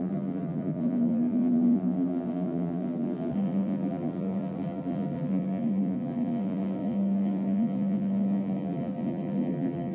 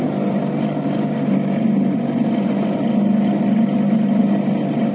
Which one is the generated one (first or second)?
first